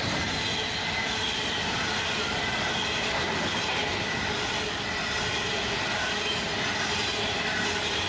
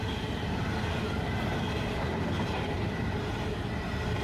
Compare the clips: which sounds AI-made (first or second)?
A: second